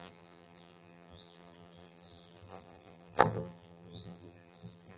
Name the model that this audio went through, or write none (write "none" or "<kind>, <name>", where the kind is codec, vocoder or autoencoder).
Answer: vocoder, BigVGAN v2